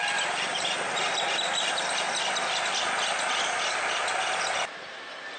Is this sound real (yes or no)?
yes